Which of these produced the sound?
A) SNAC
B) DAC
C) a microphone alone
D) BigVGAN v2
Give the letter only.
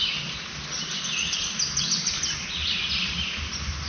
C